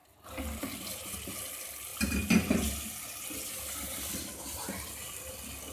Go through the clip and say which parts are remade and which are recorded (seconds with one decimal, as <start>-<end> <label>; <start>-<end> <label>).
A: 0.0-1.9 recorded; 1.9-5.3 remade; 5.3-5.7 recorded